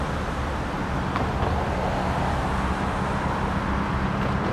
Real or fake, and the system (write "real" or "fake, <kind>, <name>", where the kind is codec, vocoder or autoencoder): real